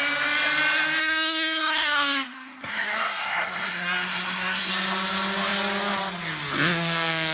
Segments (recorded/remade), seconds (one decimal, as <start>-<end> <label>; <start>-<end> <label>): 0.0-1.0 recorded; 1.0-4.7 remade; 4.7-7.3 recorded